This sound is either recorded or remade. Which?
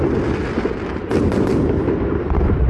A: recorded